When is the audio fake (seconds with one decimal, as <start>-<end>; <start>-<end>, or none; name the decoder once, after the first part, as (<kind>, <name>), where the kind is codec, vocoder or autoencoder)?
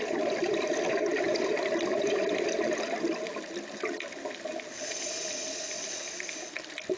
none